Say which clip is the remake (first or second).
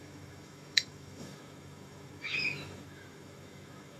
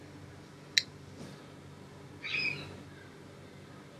first